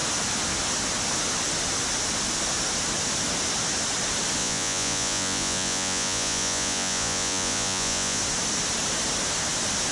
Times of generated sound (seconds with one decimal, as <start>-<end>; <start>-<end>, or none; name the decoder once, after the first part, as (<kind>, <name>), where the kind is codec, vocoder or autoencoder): 4.4-8.2 (vocoder, Vocos)